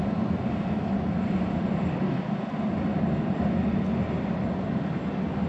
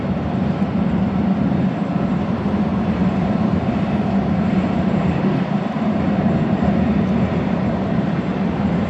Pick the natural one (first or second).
first